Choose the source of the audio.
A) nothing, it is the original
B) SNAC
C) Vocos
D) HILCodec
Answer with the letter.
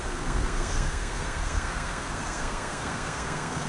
B